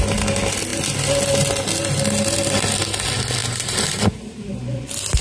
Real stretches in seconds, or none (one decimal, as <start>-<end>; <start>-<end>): 0.0-3.4; 4.3-5.2